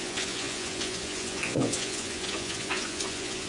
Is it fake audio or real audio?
fake